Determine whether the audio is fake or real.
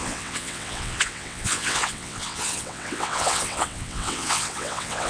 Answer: fake